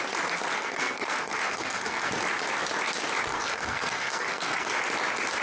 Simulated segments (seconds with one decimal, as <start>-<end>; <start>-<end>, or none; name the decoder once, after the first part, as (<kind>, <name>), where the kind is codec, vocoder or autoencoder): 0.5-2.1 (codec, SNAC); 3.3-4.7